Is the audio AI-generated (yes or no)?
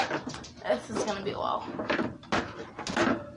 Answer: no